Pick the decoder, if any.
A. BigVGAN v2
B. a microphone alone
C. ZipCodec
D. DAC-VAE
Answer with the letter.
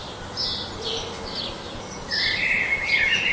B